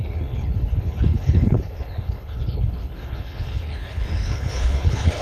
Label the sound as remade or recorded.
remade